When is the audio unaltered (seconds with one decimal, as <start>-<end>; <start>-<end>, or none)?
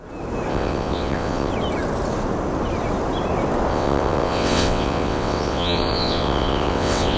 0.0-0.5; 1.5-3.7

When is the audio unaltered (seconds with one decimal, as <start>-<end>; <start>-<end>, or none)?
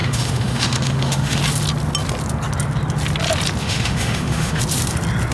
1.4-3.6; 4.6-5.3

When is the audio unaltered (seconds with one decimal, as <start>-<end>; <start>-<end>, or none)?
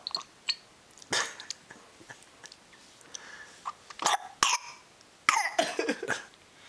0.0-6.7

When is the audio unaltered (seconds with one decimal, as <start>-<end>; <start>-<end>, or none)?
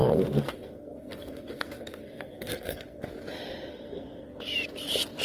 3.1-3.7; 4.4-5.2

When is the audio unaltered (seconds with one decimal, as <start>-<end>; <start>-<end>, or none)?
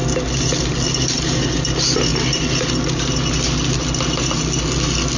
0.0-5.2